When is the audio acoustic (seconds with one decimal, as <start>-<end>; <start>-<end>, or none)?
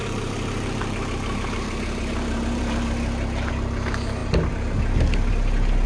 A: 3.5-5.9